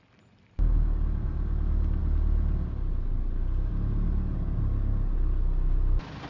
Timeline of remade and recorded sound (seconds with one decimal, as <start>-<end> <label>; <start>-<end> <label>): 0.0-6.3 recorded